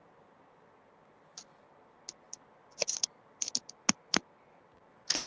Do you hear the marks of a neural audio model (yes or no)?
no